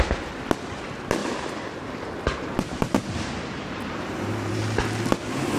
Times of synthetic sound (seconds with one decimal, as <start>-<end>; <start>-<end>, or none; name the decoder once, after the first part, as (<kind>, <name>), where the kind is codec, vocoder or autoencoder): 1.2-4.6 (vocoder, BigVGAN v2)